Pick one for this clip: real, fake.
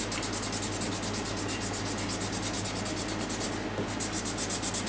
real